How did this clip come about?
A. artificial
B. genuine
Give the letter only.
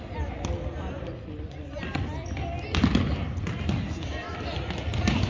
B